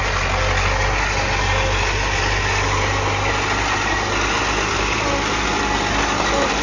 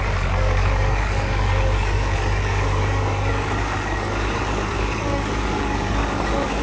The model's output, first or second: second